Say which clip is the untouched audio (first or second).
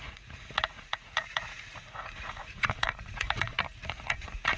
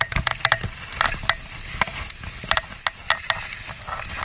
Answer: second